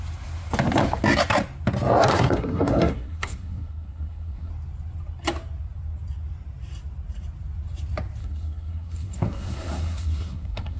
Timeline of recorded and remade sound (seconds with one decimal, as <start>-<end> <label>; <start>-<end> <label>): 0.0-2.1 recorded; 2.1-4.5 remade; 4.5-8.2 recorded; 8.2-10.8 remade